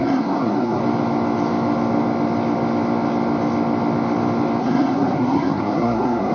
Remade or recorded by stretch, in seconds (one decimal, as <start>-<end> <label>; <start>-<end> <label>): 0.0-0.8 remade; 0.8-4.6 recorded; 4.6-6.3 remade